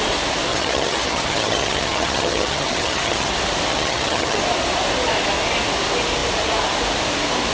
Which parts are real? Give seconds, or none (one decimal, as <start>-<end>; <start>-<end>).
0.0-0.5; 3.3-3.7; 4.4-7.5